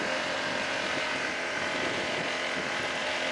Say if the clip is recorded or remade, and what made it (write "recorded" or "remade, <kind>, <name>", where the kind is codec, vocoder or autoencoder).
remade, vocoder, BigVGAN v2